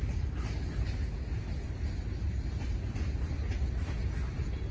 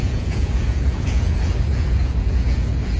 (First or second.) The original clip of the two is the first